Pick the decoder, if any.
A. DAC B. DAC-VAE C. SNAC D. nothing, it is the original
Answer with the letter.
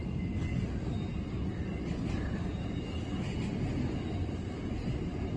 D